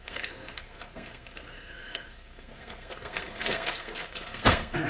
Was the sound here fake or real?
fake